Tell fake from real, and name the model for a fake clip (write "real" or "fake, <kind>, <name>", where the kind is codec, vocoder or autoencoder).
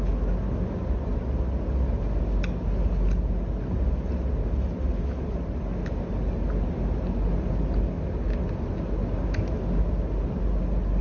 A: real